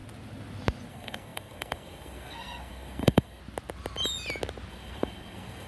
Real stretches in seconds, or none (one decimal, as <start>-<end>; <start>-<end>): 0.0-0.9; 3.4-4.7